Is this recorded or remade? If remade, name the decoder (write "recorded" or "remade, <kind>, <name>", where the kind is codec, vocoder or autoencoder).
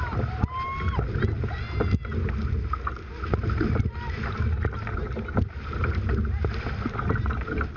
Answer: recorded